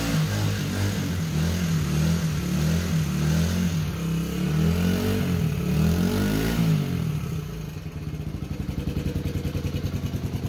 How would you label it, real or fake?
real